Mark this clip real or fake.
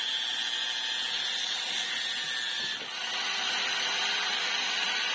real